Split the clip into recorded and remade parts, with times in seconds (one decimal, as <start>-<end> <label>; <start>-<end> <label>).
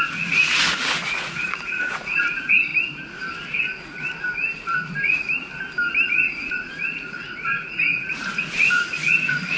0.0-2.7 remade; 2.7-6.5 recorded; 6.5-9.6 remade